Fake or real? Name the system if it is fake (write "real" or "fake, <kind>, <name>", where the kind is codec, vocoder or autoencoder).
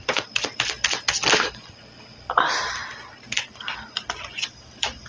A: fake, vocoder, BigVGAN v2